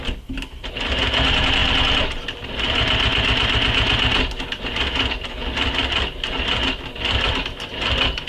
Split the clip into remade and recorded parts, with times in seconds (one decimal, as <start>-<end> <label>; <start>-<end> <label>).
0.0-8.3 recorded